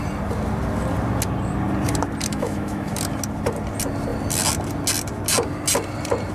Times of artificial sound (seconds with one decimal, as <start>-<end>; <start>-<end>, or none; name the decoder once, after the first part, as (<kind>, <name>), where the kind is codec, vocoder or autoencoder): 2.3-2.9 (autoencoder, DAC-VAE)

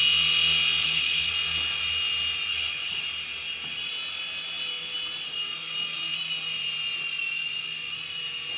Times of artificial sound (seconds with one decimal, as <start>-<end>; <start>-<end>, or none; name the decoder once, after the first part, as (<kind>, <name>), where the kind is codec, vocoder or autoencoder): 0.8-1.3 (codec, HILCodec); 2.5-3.0